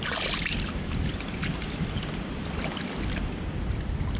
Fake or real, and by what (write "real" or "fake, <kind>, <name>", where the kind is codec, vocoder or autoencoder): fake, vocoder, BigVGAN v2